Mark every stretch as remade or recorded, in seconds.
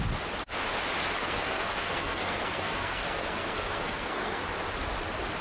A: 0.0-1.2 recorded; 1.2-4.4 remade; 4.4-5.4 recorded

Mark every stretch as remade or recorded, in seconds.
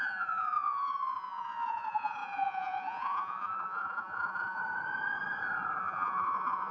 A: 0.0-4.6 remade; 4.6-5.8 recorded; 5.8-6.7 remade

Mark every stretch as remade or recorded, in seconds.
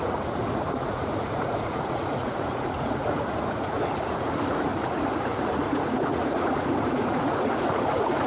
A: 0.0-4.7 remade; 4.7-5.3 recorded; 5.3-8.3 remade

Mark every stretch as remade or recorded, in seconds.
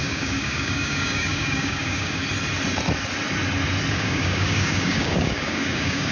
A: 0.0-2.2 remade; 2.2-3.9 recorded; 3.9-6.1 remade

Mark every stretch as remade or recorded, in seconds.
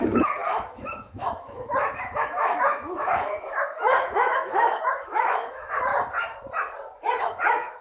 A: 0.0-5.9 remade; 5.9-7.2 recorded; 7.2-7.8 remade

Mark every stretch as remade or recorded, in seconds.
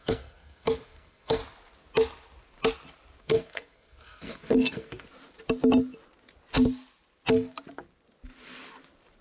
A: 0.0-1.4 remade; 1.4-3.2 recorded; 3.2-5.1 remade; 5.1-9.2 recorded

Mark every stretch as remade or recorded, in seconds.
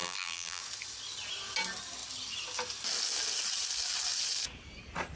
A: 0.0-0.6 remade; 0.6-5.2 recorded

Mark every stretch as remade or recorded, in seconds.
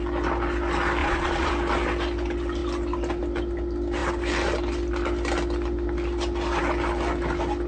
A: 0.0-1.0 recorded; 1.0-1.5 remade; 1.5-7.7 recorded